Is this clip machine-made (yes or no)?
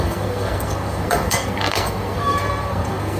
yes